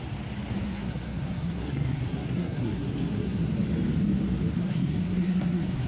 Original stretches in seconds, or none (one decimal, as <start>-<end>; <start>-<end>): 0.0-0.5; 3.5-4.6

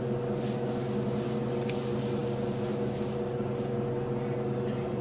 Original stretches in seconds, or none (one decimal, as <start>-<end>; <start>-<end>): 0.0-5.0

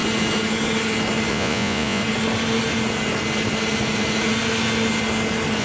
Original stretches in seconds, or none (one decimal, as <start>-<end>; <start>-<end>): 0.0-1.3; 2.0-5.6

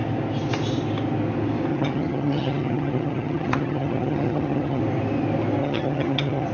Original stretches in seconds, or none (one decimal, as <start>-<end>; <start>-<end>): 0.0-1.7; 4.8-5.6

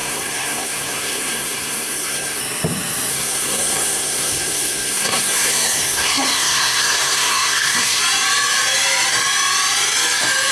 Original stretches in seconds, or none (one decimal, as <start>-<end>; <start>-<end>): 2.4-3.1; 8.0-10.5

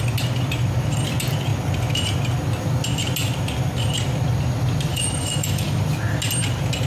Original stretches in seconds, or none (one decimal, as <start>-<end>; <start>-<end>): 0.0-4.9; 5.8-6.9

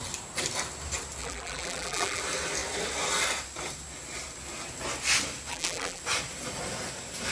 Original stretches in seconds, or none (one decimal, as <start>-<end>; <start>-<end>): 0.0-1.2; 2.2-5.5; 6.0-7.3